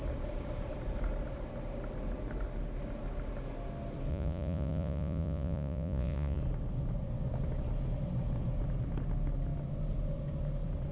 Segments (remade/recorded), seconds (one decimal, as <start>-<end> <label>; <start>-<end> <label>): 0.0-4.1 recorded; 4.1-6.4 remade; 6.4-10.9 recorded